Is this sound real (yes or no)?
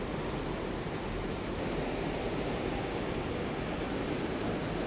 yes